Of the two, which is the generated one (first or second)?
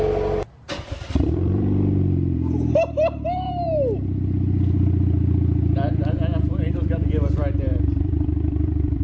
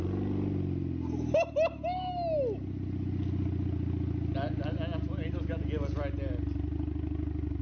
first